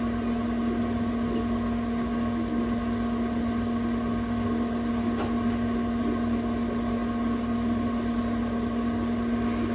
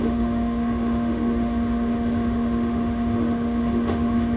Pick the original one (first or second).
first